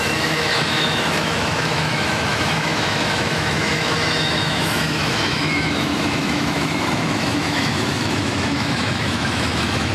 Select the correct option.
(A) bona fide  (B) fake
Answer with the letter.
B